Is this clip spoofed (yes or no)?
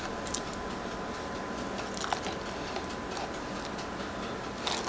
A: no